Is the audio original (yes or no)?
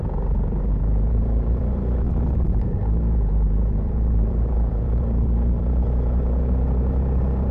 no